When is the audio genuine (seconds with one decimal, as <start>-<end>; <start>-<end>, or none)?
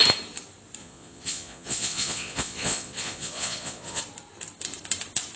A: 0.0-0.8; 4.0-5.4